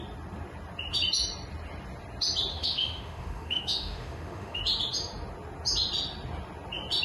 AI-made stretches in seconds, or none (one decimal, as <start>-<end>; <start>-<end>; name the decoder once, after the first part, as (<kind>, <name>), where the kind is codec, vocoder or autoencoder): 2.5-4.6 (autoencoder, DAC-VAE)